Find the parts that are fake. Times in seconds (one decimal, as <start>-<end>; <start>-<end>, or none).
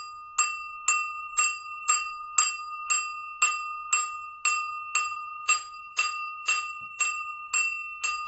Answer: 1.2-2.1; 5.1-7.5